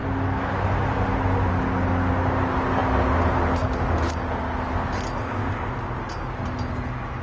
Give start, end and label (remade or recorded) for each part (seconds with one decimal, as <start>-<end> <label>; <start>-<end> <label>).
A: 0.0-5.2 recorded; 5.2-5.7 remade; 5.7-7.2 recorded